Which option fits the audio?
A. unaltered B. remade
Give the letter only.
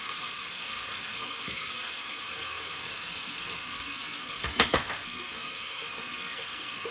B